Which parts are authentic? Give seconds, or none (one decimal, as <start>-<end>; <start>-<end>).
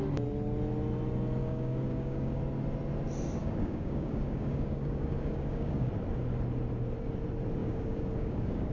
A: 0.0-1.4; 2.4-3.4; 5.9-7.6